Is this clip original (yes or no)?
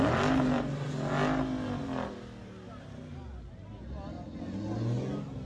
yes